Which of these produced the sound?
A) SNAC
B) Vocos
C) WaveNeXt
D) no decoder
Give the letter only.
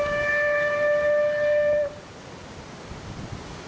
D